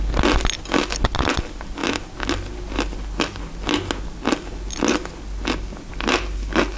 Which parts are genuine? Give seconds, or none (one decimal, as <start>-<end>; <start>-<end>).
0.0-6.8